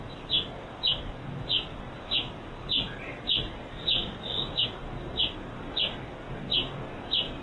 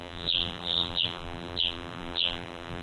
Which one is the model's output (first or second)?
second